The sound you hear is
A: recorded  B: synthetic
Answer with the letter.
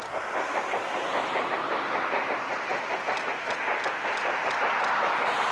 A